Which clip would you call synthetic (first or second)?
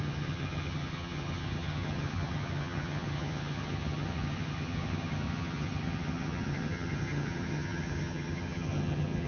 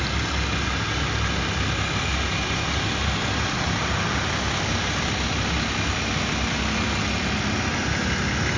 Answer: first